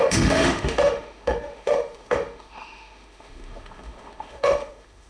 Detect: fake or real fake